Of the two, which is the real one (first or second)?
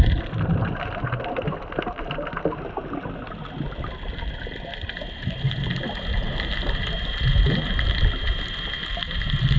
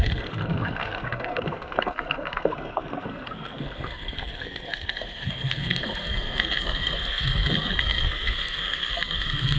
first